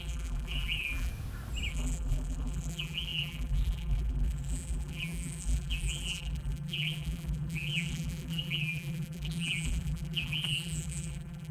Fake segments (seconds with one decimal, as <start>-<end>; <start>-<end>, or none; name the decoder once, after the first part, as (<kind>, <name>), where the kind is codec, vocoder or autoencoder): 0.0-1.1 (vocoder, BigVGAN v2); 1.7-11.5